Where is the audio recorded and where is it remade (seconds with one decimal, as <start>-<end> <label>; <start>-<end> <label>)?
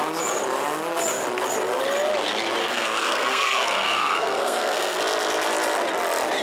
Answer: 0.0-2.6 recorded; 2.6-5.0 remade; 5.0-6.4 recorded